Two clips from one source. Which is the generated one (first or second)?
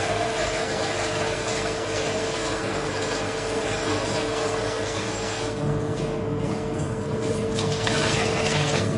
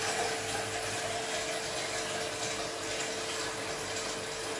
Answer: first